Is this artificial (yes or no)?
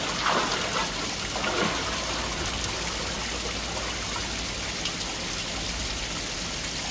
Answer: no